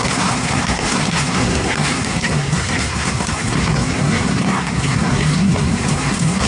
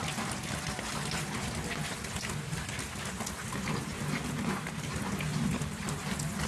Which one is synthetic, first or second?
first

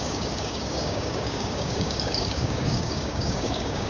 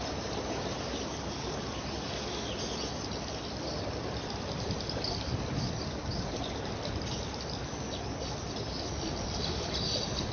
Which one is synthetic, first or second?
first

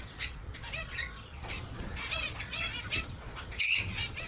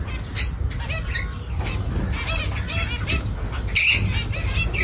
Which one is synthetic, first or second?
first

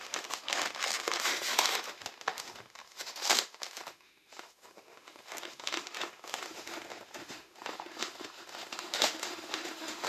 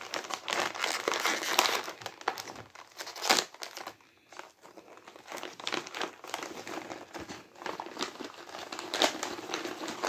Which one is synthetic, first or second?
first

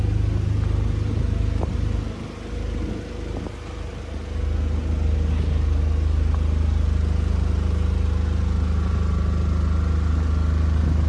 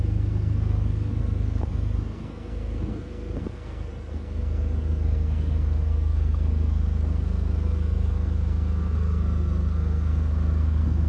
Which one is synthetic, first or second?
second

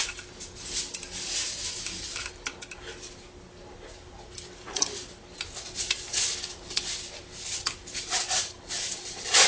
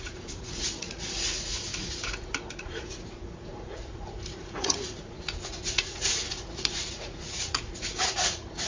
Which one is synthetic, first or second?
second